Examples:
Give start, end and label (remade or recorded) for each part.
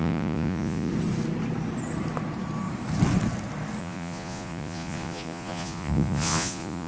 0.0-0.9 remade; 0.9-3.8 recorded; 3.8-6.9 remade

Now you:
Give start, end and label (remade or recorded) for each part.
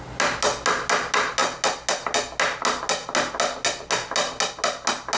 0.0-5.2 recorded